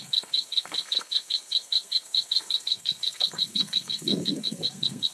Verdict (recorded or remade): remade